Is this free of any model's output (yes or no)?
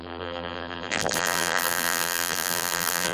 no